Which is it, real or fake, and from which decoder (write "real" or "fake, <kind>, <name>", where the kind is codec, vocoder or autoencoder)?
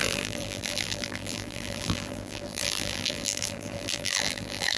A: fake, vocoder, BigVGAN v2